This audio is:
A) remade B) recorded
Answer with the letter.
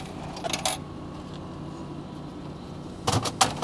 B